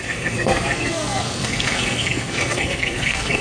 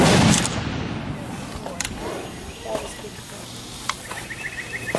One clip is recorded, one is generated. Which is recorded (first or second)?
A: second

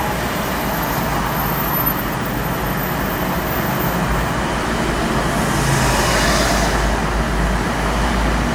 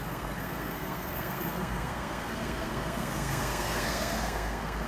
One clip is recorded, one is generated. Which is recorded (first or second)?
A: first